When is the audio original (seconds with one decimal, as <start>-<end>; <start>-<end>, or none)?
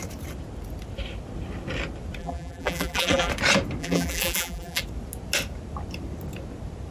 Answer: 0.0-2.2; 3.3-3.8; 4.8-6.9